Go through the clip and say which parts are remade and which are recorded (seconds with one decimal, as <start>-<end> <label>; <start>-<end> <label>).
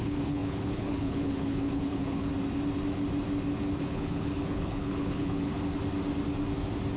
0.0-2.3 remade; 2.3-3.8 recorded; 3.8-5.5 remade; 5.5-7.0 recorded